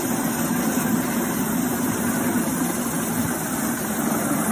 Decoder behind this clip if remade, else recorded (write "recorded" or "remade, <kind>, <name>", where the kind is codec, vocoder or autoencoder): recorded